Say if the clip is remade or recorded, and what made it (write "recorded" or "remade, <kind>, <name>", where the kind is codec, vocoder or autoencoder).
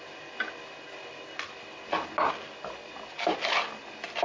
recorded